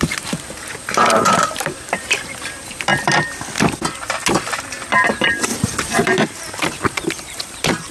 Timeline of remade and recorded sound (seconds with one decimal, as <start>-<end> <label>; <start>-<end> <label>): 0.0-2.9 remade; 2.9-4.3 recorded; 4.3-5.5 remade; 5.5-6.0 recorded; 6.0-7.9 remade